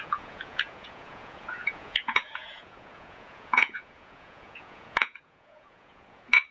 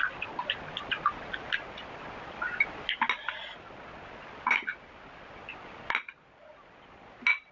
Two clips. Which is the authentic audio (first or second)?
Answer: second